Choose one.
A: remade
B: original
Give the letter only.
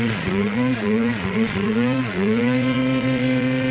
A